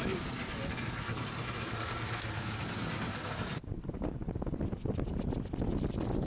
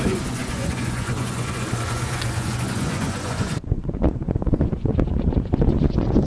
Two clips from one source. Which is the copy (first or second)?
second